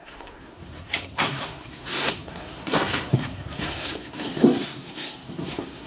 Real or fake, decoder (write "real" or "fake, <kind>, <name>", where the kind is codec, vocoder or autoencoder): fake, codec, SNAC